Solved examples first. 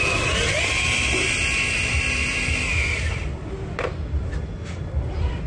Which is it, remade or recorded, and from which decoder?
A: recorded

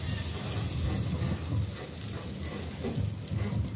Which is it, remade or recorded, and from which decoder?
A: recorded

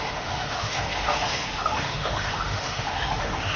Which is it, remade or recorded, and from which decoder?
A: remade, autoencoder, DAC-VAE